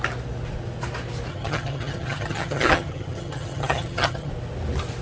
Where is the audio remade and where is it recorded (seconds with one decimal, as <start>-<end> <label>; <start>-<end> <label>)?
0.0-1.3 recorded; 1.3-4.3 remade; 4.3-5.0 recorded